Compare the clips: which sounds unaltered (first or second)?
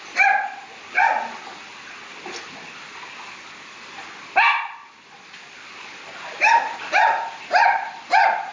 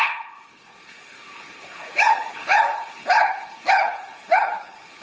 first